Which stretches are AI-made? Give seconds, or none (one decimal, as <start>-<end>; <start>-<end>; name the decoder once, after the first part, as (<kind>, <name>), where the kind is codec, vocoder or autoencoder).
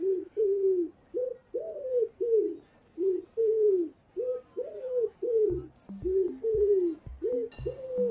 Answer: none